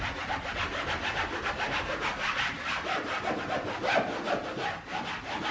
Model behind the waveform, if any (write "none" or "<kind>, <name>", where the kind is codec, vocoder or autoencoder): none